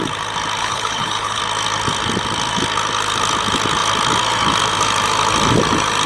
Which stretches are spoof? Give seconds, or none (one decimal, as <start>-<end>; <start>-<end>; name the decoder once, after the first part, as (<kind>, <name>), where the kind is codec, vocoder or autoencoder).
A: 0.6-1.4 (codec, HILCodec)